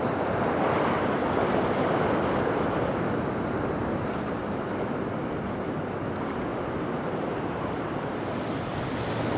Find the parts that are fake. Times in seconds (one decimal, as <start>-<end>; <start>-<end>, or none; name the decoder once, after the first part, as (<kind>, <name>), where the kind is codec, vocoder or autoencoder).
1.2-1.9 (vocoder, BigVGAN v2); 6.5-8.2